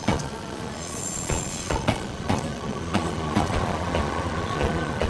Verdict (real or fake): fake